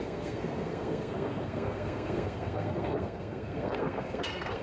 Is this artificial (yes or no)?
yes